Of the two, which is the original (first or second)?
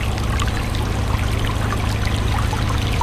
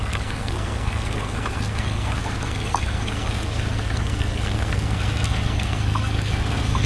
first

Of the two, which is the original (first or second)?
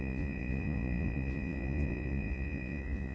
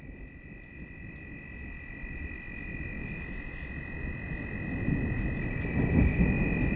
second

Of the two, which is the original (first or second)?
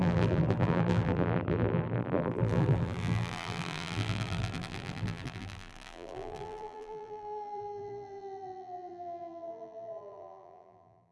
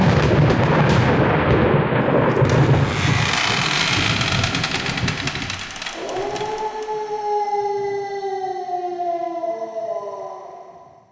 second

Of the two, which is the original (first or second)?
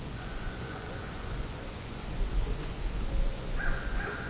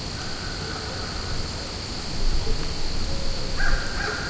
second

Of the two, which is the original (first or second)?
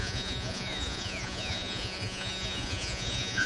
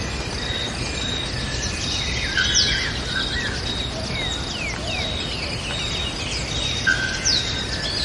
second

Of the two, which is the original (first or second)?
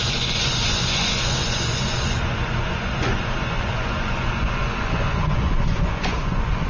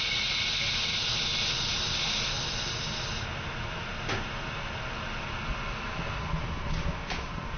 second